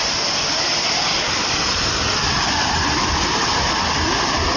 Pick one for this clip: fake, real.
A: real